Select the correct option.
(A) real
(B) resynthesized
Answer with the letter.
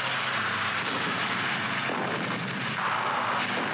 A